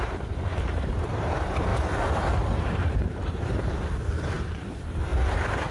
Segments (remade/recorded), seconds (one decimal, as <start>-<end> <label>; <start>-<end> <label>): 0.0-1.7 remade; 1.7-2.3 recorded; 2.3-5.1 remade; 5.1-5.7 recorded